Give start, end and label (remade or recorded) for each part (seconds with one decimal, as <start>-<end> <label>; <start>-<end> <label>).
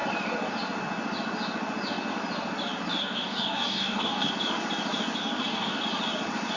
0.0-3.0 recorded; 3.0-4.3 remade; 4.3-5.2 recorded; 5.2-5.8 remade; 5.8-6.6 recorded